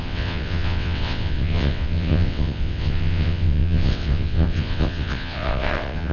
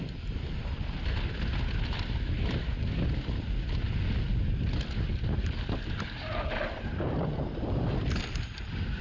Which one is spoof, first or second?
first